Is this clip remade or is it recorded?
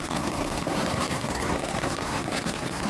remade